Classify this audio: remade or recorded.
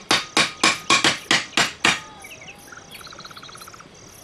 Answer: recorded